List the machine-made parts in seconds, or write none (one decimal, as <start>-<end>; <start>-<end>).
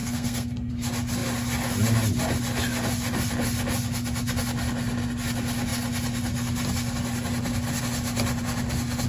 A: 0.0-0.7